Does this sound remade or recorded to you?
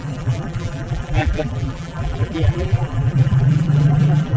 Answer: remade